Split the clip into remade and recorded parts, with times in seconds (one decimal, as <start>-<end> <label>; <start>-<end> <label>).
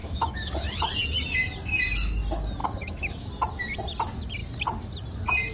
0.0-0.8 remade; 0.8-2.6 recorded; 2.6-3.3 remade; 3.3-5.5 recorded